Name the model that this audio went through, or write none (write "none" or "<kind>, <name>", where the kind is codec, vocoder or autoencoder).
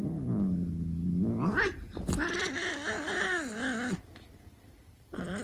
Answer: none